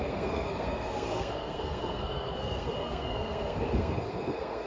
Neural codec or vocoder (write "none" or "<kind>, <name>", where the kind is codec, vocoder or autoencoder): codec, SNAC